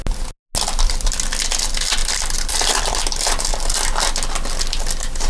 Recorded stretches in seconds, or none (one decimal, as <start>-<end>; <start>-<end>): 0.0-2.0; 3.5-5.3